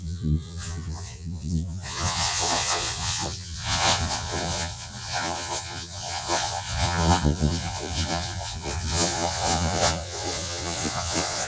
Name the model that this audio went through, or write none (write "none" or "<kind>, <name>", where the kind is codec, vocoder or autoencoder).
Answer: vocoder, Vocos